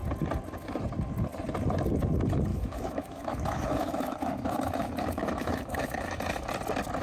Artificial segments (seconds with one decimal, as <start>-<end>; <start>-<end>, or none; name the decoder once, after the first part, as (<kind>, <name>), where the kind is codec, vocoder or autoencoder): 2.5-6.5 (autoencoder, DAC-VAE)